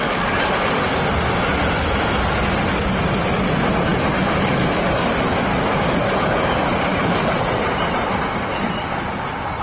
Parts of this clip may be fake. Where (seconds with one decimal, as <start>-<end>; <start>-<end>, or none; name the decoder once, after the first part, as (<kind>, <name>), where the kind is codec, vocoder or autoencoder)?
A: none